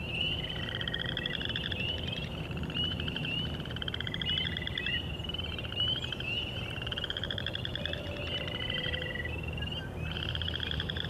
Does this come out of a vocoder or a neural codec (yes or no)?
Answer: yes